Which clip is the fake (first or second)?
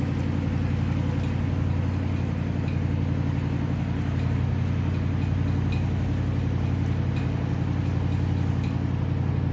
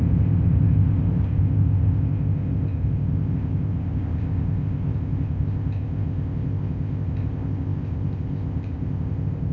second